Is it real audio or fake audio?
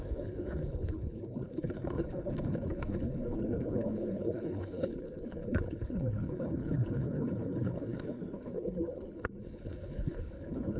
fake